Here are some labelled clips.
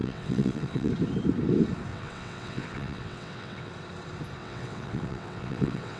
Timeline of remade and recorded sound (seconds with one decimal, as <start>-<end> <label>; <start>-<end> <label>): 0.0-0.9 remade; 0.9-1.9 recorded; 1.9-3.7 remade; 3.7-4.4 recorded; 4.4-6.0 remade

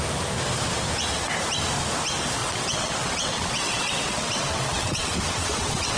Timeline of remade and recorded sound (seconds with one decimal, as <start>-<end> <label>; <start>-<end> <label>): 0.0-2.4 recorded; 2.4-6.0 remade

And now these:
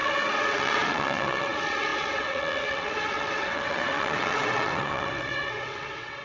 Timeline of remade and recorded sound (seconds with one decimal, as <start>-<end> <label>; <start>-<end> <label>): 0.0-6.2 remade

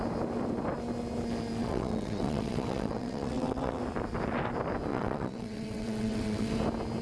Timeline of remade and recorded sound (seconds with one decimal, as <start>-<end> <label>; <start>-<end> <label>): 0.0-1.6 recorded; 1.6-3.8 remade; 3.8-4.9 recorded; 4.9-6.5 remade; 6.5-7.0 recorded

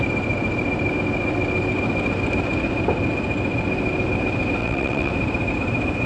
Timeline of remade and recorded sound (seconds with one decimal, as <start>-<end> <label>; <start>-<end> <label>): 0.0-4.6 recorded; 4.6-5.1 remade; 5.1-6.1 recorded

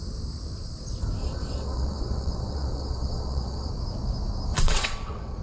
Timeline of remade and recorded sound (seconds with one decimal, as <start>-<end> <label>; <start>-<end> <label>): 0.0-1.2 recorded; 1.2-3.7 remade; 3.7-4.5 recorded; 4.5-5.4 remade

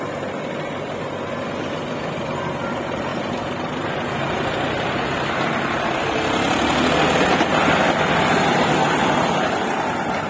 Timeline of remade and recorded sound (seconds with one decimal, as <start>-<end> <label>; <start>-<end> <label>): 0.0-10.3 recorded